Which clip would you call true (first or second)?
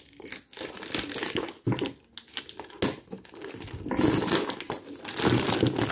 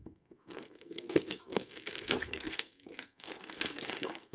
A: first